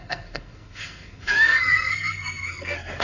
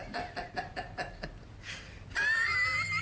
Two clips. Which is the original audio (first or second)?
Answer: second